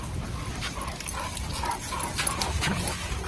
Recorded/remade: recorded